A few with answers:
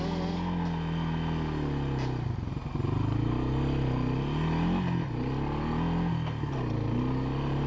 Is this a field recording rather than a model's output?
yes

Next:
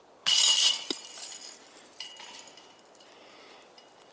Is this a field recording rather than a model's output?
yes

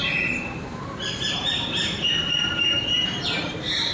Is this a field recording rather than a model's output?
no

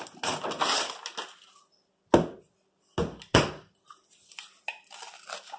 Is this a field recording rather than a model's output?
yes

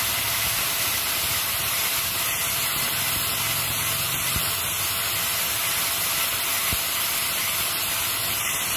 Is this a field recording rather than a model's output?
yes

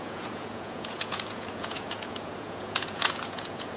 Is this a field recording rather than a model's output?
no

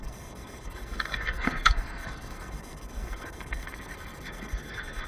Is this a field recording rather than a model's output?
no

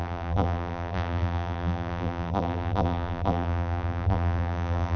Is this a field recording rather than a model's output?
no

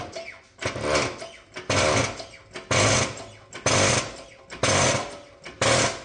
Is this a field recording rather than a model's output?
yes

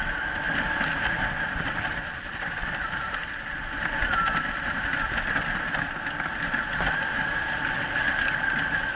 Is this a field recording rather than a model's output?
yes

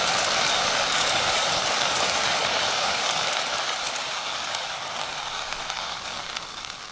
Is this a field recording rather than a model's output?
no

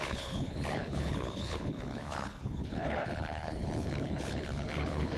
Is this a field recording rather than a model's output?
no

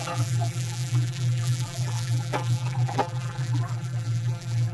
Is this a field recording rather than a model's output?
no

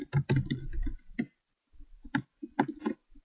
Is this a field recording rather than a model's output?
yes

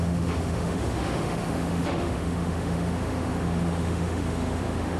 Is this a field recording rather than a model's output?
no